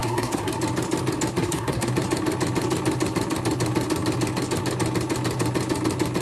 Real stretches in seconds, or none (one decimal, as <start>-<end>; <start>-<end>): 0.5-1.4; 1.9-6.2